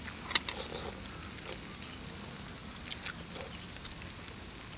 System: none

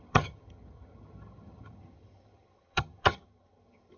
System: vocoder, HiFi-GAN